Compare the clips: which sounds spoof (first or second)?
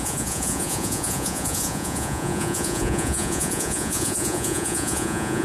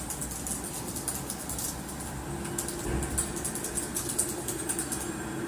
first